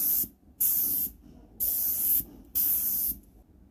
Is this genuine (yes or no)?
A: yes